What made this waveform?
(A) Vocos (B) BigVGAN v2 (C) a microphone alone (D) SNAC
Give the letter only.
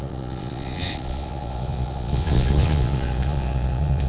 A